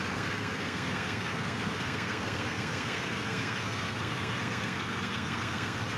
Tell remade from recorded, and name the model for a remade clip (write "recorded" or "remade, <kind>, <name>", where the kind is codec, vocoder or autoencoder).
remade, codec, SNAC